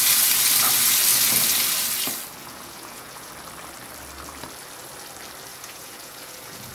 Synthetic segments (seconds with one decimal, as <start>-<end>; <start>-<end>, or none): 2.4-3.3; 5.5-6.7